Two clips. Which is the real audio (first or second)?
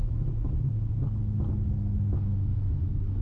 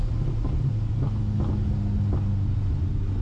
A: second